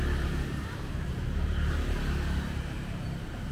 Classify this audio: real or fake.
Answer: fake